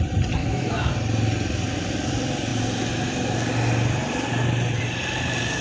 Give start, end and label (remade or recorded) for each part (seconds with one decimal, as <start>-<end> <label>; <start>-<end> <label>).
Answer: 0.0-0.4 recorded; 0.4-0.9 remade; 0.9-5.6 recorded